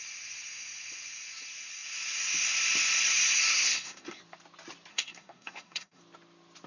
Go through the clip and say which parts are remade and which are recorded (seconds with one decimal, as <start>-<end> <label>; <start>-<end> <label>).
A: 0.0-3.5 recorded; 3.5-4.2 remade; 4.2-4.9 recorded; 4.9-6.0 remade; 6.0-6.7 recorded